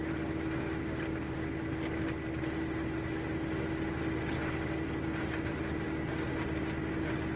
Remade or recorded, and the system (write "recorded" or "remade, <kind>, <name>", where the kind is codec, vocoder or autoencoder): recorded